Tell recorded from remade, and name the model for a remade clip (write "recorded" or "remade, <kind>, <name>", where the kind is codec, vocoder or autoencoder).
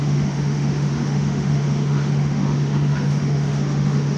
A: remade, autoencoder, DAC-VAE